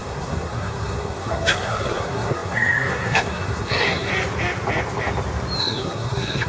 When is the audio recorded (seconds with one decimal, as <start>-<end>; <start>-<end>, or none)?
4.1-5.6